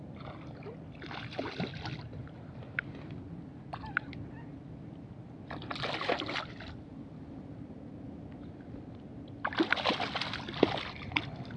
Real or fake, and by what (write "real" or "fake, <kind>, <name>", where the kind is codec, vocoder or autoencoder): real